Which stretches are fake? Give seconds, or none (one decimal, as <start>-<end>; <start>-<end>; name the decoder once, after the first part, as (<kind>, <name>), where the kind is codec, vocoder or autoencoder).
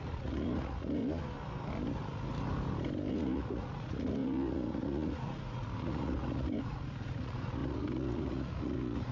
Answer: 0.0-1.0 (vocoder, Vocos); 3.1-9.1